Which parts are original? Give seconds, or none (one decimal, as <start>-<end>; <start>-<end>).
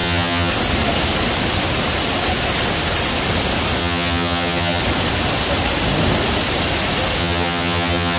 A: 0.5-3.8; 4.8-7.2